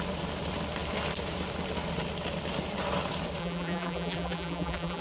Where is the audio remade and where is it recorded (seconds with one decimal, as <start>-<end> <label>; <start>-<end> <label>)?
0.0-3.4 recorded; 3.4-5.0 remade